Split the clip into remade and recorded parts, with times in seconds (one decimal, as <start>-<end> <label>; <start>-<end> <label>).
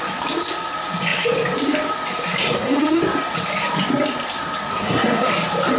0.0-2.4 recorded; 2.4-3.0 remade; 3.0-4.7 recorded; 4.7-5.3 remade; 5.3-5.8 recorded